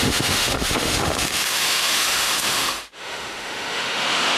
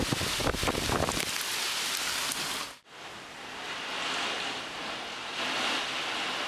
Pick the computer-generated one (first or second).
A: first